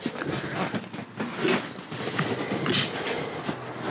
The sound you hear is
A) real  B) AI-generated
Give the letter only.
A